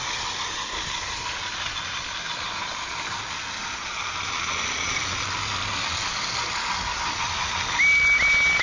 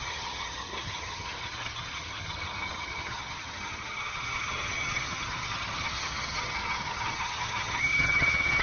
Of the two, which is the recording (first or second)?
first